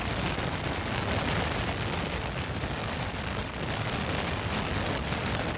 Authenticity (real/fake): real